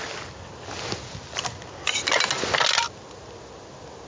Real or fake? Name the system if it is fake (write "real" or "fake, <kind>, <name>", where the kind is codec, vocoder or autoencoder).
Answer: real